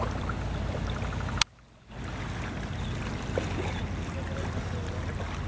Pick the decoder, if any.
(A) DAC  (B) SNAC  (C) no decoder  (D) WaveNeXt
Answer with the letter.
C